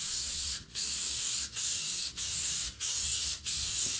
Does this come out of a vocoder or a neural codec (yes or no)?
yes